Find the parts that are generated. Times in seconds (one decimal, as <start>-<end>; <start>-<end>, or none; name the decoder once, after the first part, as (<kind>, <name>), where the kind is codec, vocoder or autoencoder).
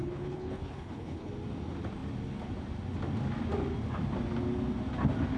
0.0-1.3 (codec, HILCodec)